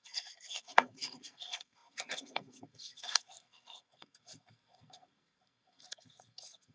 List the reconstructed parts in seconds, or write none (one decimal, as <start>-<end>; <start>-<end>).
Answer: 0.0-6.7

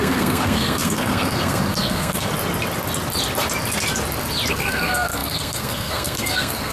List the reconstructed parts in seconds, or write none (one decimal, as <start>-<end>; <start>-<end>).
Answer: 0.0-2.3; 4.5-6.7